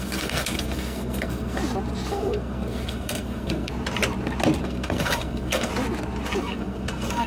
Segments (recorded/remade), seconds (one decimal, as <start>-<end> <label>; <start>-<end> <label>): 0.0-1.6 remade; 1.6-2.1 recorded; 2.1-3.7 remade; 3.7-4.6 recorded; 4.6-5.7 remade; 5.7-6.4 recorded; 6.4-7.3 remade